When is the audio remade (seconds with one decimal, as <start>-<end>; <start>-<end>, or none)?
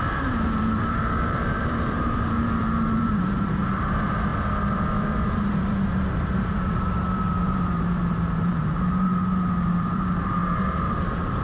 0.0-4.3; 5.6-11.4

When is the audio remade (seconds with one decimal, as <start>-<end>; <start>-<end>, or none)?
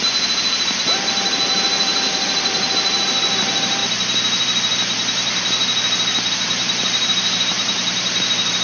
0.0-3.8; 6.3-8.6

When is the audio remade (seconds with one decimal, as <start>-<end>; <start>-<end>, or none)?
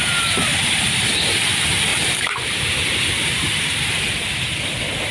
0.5-1.0; 1.9-4.0